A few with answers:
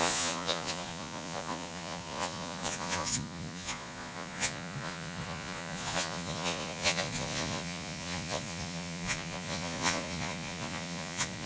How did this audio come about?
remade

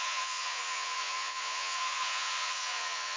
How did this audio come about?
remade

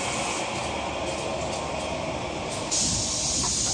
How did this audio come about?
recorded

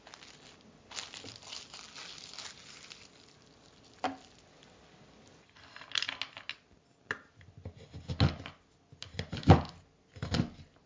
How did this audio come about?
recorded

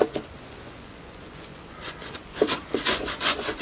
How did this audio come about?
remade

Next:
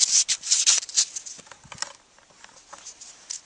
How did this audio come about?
recorded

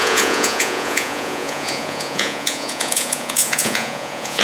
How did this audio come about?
remade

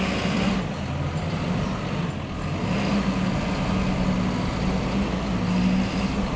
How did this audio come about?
recorded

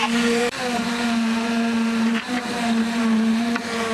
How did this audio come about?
remade